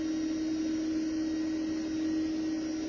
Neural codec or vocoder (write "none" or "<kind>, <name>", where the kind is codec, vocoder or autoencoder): none